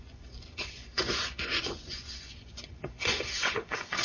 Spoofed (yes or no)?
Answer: yes